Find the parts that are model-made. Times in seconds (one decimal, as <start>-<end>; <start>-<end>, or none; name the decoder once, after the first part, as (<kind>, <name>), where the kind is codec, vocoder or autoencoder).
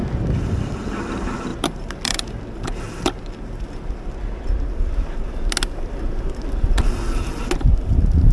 none